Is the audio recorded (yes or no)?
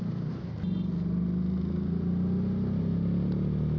yes